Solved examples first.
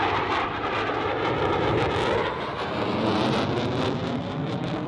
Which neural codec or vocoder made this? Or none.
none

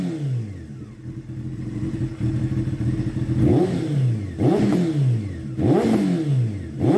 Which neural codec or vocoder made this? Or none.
none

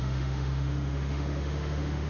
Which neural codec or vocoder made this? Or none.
autoencoder, DAC-VAE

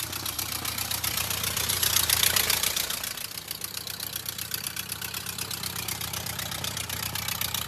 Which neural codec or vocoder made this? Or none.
vocoder, BigVGAN v2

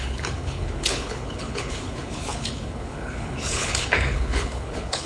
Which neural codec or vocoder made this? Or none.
codec, HILCodec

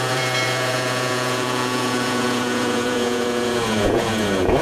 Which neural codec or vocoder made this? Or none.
vocoder, Vocos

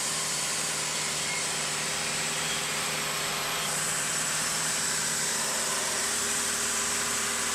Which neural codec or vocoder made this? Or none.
vocoder, BigVGAN v2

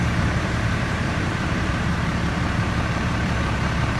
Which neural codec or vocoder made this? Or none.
vocoder, BigVGAN v2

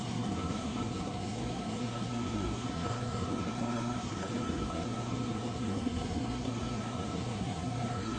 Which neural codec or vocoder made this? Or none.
codec, SNAC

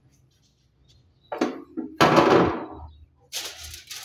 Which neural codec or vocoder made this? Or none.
none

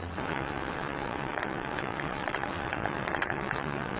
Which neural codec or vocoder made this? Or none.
vocoder, WaveNeXt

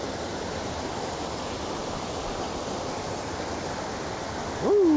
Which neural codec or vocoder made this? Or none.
none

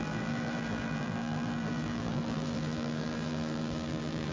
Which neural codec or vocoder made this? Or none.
vocoder, BigVGAN v2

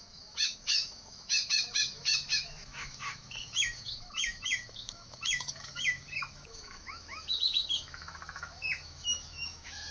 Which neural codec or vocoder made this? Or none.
autoencoder, DAC-VAE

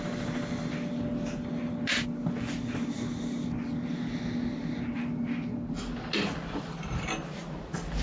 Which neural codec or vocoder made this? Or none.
none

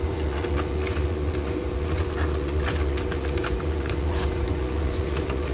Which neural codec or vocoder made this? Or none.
vocoder, Vocos